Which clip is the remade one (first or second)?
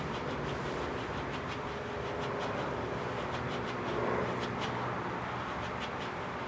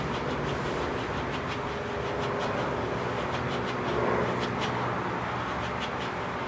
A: first